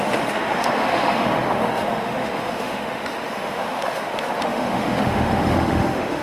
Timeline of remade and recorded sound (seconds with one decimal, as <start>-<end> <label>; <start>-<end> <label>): 0.0-6.2 remade